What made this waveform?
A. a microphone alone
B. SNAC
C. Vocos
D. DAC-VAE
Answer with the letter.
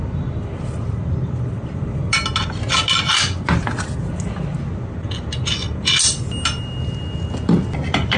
A